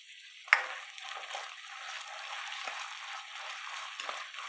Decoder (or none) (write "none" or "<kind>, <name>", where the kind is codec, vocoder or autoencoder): none